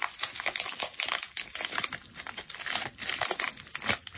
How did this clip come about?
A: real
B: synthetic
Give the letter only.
A